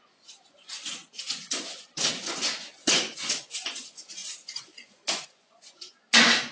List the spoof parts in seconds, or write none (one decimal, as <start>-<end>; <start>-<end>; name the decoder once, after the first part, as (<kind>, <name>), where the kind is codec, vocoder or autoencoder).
0.0-6.5 (vocoder, Vocos)